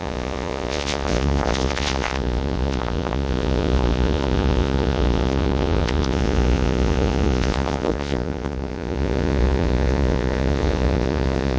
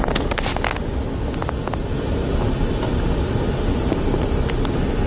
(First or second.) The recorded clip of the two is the second